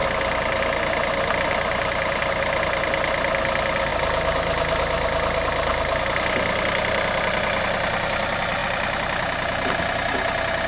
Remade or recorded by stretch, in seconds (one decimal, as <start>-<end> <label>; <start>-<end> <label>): 0.0-10.7 recorded